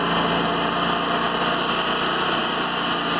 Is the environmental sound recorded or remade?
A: recorded